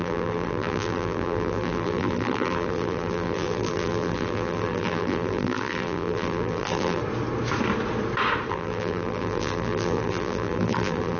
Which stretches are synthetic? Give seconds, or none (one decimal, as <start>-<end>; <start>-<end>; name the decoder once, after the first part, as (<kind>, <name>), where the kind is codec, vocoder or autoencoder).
0.0-7.0 (vocoder, BigVGAN v2); 8.5-11.2